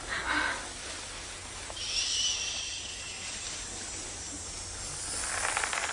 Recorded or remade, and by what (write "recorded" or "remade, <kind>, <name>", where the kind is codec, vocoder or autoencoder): recorded